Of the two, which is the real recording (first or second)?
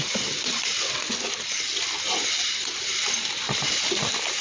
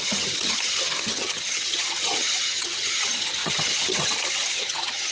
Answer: first